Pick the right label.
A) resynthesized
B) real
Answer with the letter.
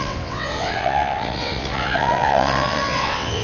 A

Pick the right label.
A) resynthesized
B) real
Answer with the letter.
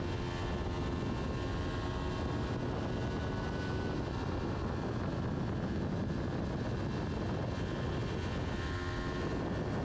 B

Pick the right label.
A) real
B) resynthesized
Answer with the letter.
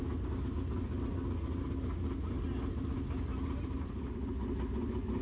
A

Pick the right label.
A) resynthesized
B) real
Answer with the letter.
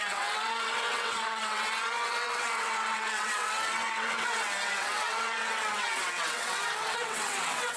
A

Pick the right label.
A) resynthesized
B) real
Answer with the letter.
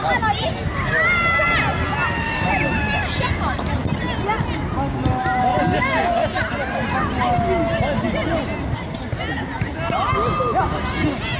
B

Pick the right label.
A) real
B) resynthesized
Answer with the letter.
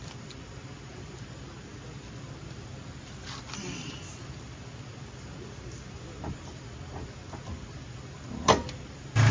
A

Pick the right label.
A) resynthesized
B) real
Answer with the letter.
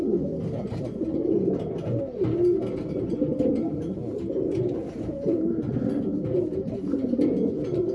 B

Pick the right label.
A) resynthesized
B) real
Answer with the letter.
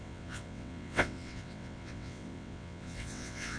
A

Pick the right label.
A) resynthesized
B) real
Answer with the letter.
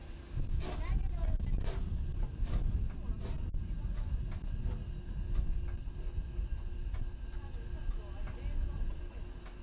B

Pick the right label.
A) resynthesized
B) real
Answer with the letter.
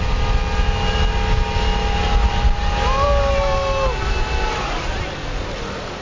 B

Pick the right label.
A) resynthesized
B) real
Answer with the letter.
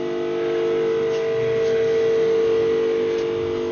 B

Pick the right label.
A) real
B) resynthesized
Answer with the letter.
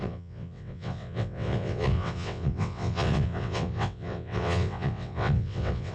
B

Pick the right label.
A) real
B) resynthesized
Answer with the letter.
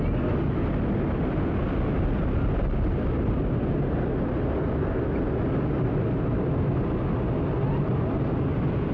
A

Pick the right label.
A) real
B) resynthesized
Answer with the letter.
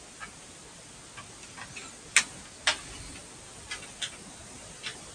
A